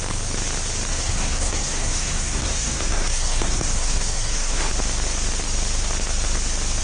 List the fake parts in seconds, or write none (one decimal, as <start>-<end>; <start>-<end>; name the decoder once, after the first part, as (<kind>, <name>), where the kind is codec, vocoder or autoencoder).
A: 0.9-4.7 (codec, SNAC)